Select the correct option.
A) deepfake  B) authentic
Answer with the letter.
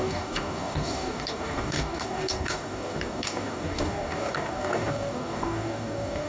A